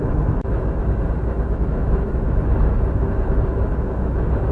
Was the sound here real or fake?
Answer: fake